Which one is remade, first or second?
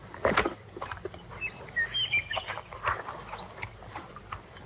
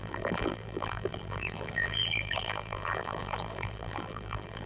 second